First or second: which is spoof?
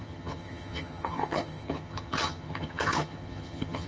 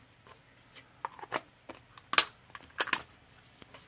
first